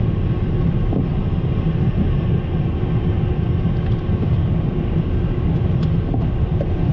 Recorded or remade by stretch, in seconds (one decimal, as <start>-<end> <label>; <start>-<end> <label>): 0.0-6.9 recorded